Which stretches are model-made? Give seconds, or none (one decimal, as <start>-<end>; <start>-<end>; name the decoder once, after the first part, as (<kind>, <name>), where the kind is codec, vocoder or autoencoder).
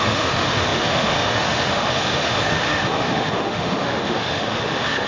0.0-5.1 (autoencoder, DAC-VAE)